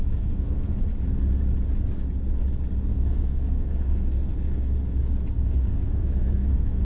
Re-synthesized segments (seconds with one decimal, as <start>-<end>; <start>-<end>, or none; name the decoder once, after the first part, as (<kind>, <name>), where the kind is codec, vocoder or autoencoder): 0.0-0.7 (codec, SNAC); 2.9-4.8; 5.4-6.8